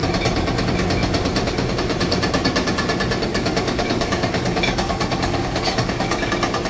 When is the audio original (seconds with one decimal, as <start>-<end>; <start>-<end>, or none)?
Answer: 0.0-3.3; 6.3-6.7